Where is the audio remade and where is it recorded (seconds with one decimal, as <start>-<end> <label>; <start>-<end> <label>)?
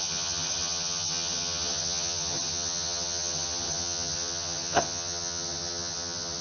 0.0-6.4 remade